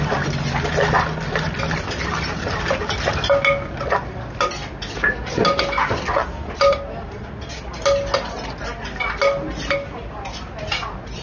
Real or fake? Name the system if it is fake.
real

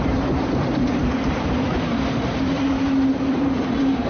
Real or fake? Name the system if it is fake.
fake, vocoder, BigVGAN v2